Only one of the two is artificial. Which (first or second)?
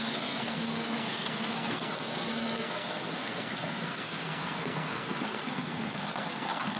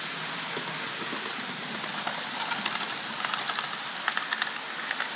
first